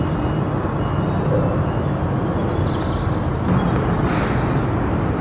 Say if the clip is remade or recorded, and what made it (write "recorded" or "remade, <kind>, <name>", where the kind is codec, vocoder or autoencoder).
recorded